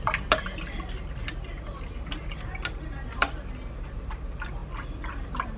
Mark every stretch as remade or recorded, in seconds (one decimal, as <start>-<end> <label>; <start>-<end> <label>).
0.0-5.6 recorded